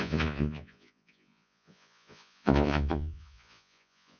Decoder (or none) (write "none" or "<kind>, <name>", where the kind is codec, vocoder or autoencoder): vocoder, Vocos